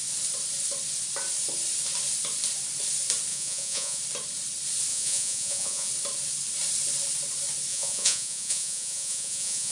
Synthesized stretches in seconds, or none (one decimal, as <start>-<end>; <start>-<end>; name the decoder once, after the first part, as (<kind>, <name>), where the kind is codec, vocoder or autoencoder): 3.3-4.0 (vocoder, Vocos); 4.9-5.9; 7.7-9.7

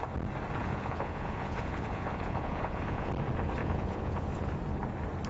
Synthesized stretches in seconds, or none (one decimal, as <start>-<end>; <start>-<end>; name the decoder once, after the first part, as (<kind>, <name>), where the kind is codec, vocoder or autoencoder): 0.6-3.1 (vocoder, Vocos); 3.6-4.6

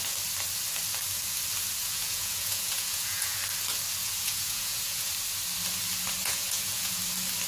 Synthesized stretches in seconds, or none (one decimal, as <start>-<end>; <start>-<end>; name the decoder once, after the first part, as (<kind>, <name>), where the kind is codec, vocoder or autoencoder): 1.8-3.4 (vocoder, Vocos); 4.0-5.1; 6.2-7.0

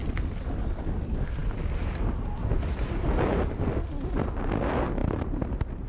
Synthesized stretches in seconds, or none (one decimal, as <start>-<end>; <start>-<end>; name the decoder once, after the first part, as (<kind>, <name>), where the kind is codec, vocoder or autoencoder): none

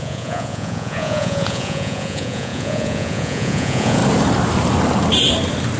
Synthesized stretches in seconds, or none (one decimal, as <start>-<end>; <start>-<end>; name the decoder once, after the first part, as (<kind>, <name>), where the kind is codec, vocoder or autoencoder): 0.0-4.0 (vocoder, Vocos)

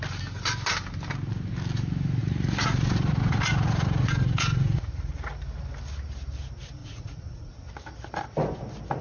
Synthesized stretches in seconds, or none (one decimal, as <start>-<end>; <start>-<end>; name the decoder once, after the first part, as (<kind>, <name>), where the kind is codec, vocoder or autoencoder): 2.2-5.1 (vocoder, Vocos); 6.8-7.5

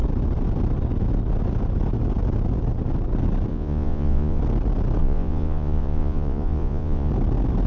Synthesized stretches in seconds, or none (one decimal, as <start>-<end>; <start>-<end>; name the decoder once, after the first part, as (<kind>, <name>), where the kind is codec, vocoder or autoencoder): 3.5-4.4 (vocoder, Vocos); 5.0-7.1

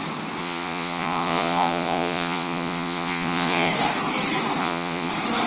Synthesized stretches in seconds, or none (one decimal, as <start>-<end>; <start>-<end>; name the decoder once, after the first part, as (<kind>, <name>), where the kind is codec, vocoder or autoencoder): 0.4-3.7 (vocoder, Vocos); 4.6-5.1